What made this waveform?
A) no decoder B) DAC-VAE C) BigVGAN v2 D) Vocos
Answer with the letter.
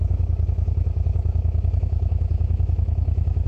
B